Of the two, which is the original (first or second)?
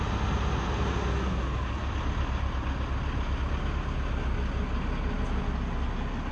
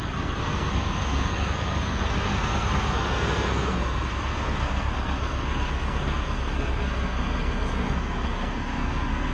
first